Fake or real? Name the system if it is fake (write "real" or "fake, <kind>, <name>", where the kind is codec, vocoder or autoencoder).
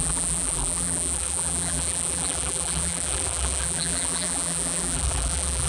fake, vocoder, BigVGAN v2